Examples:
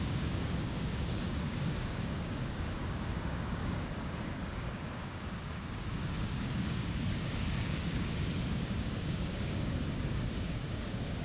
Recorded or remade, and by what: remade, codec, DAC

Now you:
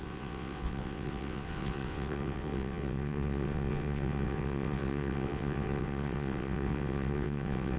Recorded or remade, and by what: remade, vocoder, WaveNeXt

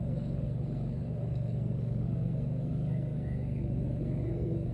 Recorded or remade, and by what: remade, codec, SNAC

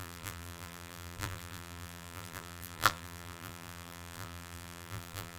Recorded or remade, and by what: remade, vocoder, BigVGAN v2